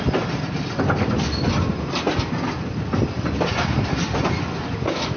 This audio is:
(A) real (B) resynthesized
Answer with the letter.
A